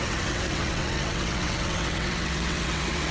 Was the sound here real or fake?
fake